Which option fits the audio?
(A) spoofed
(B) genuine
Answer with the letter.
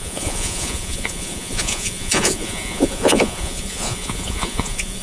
A